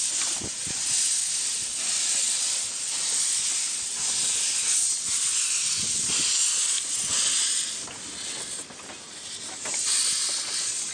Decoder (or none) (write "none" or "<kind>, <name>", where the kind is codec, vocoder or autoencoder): none